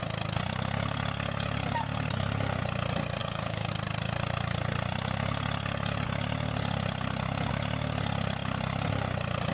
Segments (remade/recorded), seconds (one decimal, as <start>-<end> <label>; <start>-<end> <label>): 0.0-3.2 recorded; 3.2-3.7 remade; 3.7-9.5 recorded